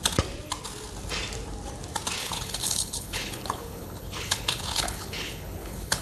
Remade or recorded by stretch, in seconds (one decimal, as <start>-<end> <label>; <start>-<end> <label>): 0.0-2.2 recorded; 2.2-6.0 remade